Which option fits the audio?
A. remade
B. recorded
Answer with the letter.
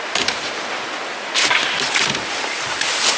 B